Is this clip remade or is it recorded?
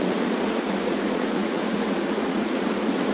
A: remade